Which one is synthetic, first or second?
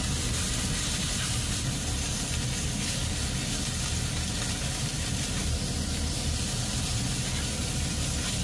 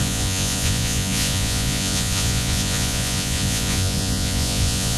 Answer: second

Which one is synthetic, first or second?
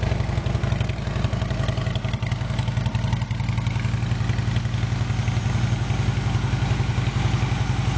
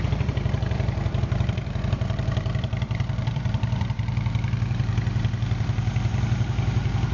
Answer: second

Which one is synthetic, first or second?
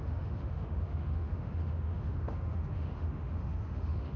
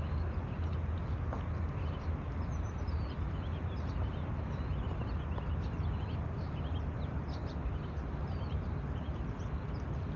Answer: first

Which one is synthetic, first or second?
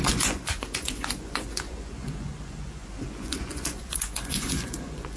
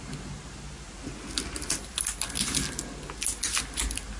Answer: first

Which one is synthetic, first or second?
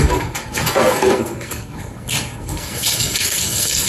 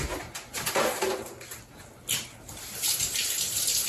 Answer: first